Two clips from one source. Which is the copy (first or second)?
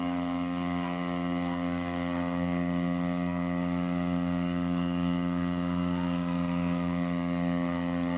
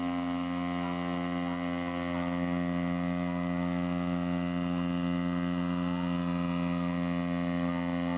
first